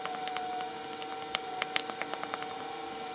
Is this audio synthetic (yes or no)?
yes